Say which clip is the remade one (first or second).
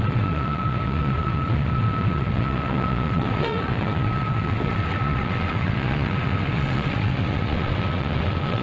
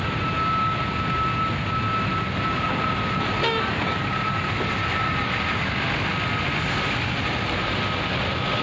first